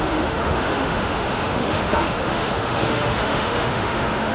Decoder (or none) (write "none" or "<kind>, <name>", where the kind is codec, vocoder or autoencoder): autoencoder, DAC-VAE